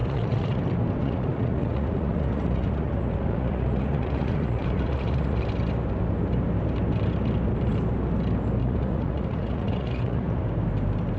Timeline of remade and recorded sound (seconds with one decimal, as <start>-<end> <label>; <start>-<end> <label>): 0.0-0.6 remade; 0.6-1.0 recorded; 1.0-5.4 remade; 5.4-8.6 recorded; 8.6-10.4 remade; 10.4-11.2 recorded